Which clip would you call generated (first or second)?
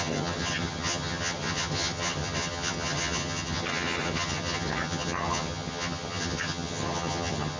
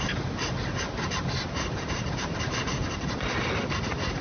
first